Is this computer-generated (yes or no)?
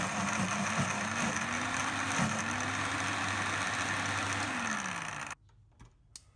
no